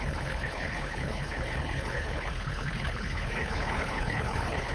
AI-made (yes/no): yes